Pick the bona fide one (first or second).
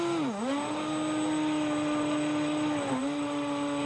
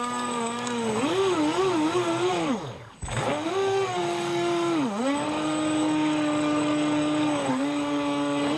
first